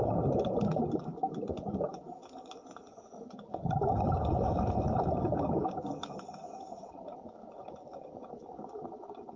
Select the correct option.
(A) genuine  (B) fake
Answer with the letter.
B